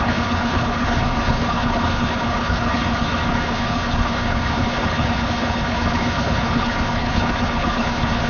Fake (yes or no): yes